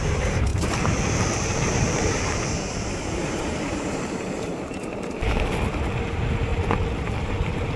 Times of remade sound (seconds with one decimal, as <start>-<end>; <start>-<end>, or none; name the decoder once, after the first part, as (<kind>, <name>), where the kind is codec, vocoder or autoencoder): 0.0-6.5 (vocoder, BigVGAN v2); 7.3-7.8